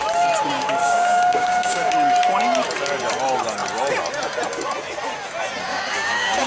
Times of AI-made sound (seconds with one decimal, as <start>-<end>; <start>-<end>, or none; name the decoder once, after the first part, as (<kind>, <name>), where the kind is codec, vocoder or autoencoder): 0.8-1.9 (codec, DAC); 5.7-6.5